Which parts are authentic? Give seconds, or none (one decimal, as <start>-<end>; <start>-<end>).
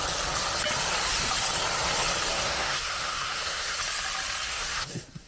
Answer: 0.0-2.3; 3.8-4.5